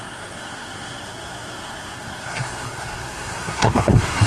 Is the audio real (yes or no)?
no